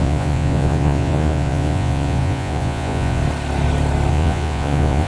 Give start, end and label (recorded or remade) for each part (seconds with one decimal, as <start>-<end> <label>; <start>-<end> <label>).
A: 0.0-3.2 remade; 3.2-4.1 recorded; 4.1-5.1 remade